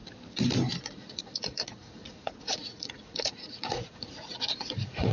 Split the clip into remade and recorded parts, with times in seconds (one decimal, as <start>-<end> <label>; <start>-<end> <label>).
0.0-0.8 recorded; 0.8-5.1 remade